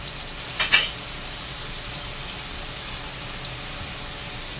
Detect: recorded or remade recorded